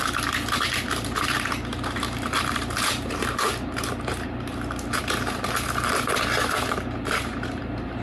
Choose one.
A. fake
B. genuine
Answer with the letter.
A